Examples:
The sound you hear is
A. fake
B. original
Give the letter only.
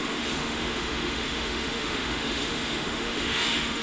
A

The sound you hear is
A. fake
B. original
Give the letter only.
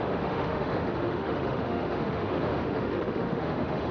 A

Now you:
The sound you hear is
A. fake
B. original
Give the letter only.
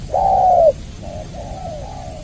B